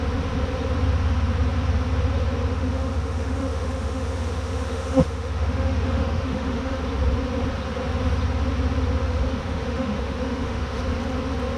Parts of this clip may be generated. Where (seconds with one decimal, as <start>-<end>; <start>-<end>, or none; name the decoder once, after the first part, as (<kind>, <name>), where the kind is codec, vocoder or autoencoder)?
2.5-6.8 (autoencoder, DAC-VAE); 9.0-10.8